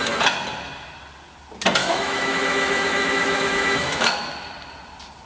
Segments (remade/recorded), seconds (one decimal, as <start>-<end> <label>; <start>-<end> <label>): 0.0-1.8 recorded; 1.8-4.3 remade; 4.3-5.3 recorded